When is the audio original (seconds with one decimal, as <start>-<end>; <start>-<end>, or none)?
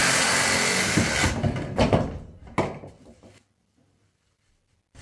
0.0-5.0